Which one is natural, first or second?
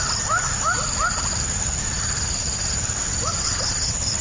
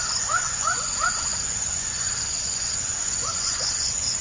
first